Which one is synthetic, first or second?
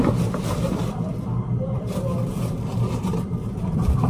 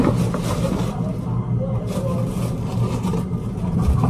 first